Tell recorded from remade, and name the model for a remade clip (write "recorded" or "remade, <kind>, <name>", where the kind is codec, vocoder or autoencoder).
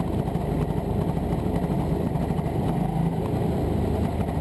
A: recorded